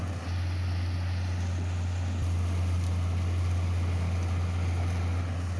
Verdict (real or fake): real